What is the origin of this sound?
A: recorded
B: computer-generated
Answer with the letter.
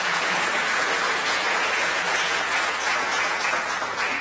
B